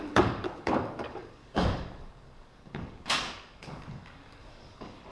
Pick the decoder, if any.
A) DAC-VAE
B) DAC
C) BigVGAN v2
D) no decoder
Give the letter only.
B